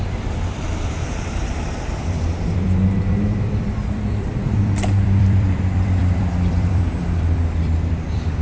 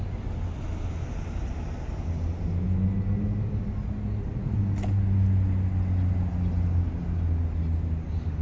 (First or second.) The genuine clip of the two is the second